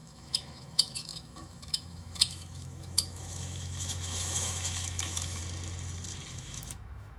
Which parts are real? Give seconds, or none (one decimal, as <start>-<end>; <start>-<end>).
5.4-6.3